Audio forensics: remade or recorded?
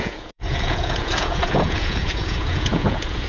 remade